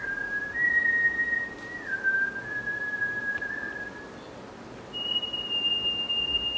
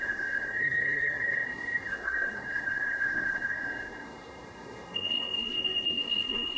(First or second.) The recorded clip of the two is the first